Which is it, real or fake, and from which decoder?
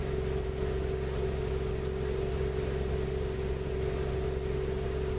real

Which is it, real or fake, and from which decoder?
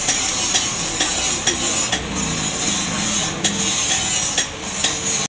real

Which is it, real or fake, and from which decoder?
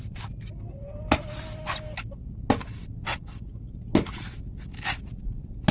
real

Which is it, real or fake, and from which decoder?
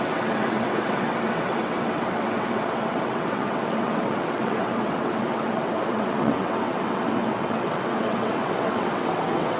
fake, vocoder, WaveNeXt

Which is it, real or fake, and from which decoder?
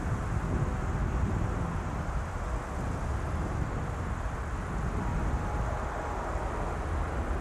real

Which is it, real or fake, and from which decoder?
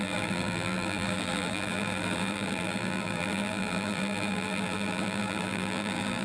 fake, vocoder, BigVGAN v2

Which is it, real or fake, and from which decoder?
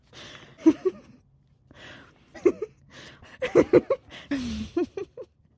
real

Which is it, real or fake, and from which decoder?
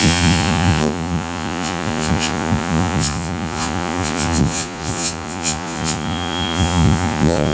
fake, vocoder, Vocos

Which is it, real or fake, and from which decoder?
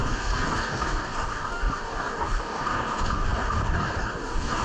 fake, codec, DAC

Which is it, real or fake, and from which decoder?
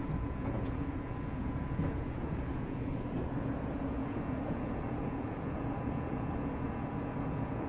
fake, vocoder, Vocos